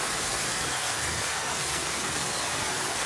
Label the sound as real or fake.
fake